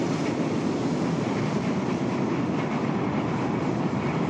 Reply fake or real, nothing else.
real